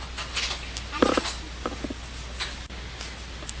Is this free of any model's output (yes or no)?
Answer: yes